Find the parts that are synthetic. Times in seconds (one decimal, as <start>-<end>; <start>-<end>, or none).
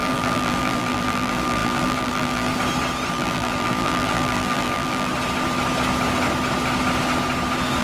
0.0-2.5; 3.1-5.1